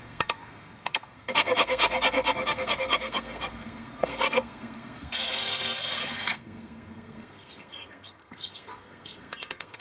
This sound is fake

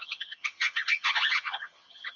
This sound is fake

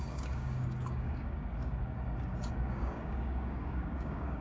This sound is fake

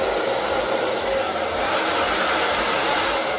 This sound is real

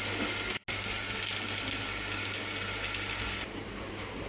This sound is real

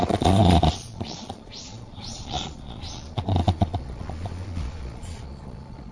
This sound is fake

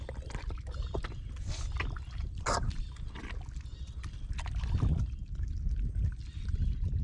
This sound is real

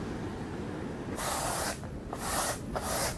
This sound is real